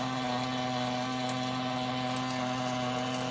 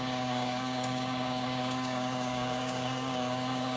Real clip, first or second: first